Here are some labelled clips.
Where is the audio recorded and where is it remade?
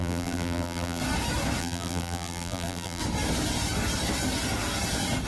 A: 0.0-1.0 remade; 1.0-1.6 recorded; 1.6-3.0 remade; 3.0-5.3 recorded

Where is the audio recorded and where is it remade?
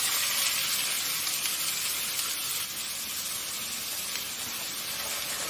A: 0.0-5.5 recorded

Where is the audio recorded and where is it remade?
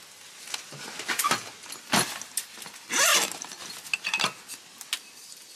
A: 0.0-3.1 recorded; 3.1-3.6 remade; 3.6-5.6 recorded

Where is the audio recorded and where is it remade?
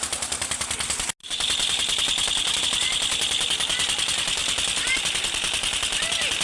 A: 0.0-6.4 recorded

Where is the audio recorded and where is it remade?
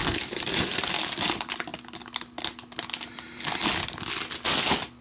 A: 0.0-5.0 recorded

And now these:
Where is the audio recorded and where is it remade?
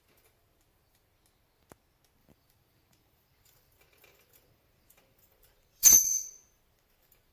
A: 0.0-2.2 recorded; 2.2-6.6 remade; 6.6-7.3 recorded